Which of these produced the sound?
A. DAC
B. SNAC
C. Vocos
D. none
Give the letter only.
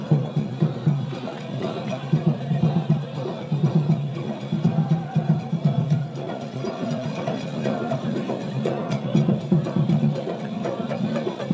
C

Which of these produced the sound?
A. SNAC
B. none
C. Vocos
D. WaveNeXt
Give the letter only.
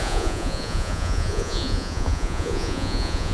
C